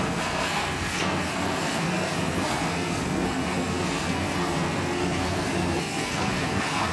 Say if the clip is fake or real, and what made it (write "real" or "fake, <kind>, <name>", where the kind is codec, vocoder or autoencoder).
fake, codec, SNAC